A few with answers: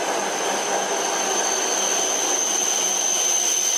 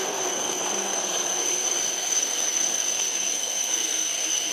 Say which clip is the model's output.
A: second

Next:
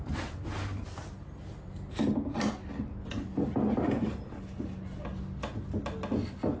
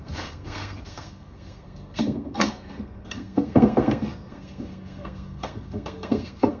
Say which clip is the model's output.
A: second